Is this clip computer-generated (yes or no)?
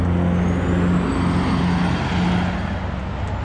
no